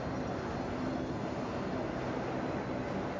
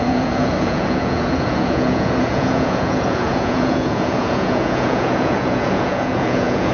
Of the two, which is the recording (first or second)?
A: first